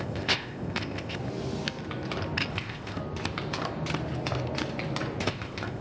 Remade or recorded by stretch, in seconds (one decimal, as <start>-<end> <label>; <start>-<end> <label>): 0.0-1.2 remade; 1.2-2.5 recorded; 2.5-3.0 remade; 3.0-5.2 recorded; 5.2-5.8 remade